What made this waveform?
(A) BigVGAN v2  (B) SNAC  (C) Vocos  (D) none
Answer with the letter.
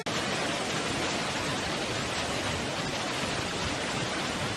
D